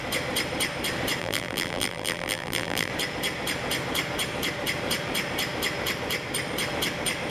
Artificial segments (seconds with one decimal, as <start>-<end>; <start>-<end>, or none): 1.2-2.9